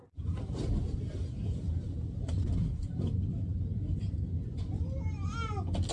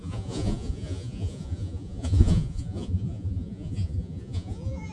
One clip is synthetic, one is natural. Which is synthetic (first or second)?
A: second